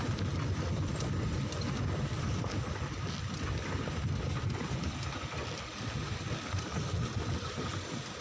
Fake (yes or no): yes